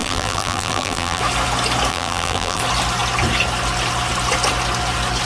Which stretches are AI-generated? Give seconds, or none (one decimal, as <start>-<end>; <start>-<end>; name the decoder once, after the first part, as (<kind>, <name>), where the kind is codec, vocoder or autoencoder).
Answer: 0.0-1.2 (vocoder, BigVGAN v2); 1.9-2.6